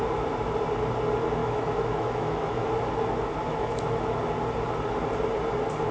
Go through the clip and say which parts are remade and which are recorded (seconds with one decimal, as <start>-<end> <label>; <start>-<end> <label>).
0.0-1.4 recorded; 1.4-2.8 remade; 2.8-3.5 recorded; 3.5-4.2 remade; 4.2-5.9 recorded